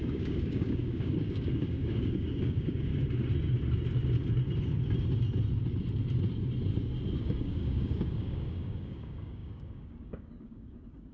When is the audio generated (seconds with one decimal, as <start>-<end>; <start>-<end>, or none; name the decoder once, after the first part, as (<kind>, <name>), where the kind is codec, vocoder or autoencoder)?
0.0-2.9 (codec, DAC); 7.2-11.1